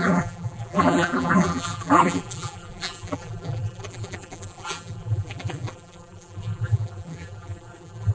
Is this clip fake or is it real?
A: fake